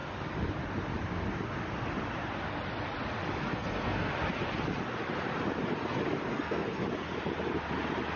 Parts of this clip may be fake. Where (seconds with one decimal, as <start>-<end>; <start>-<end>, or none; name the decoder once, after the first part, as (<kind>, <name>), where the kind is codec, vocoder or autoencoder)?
3.5-4.1 (codec, SNAC); 6.3-6.8